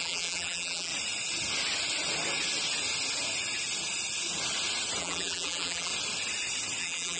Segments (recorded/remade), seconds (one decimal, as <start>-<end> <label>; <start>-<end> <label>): 0.0-0.9 remade; 0.9-5.0 recorded; 5.0-5.9 remade; 5.9-6.8 recorded; 6.8-7.2 remade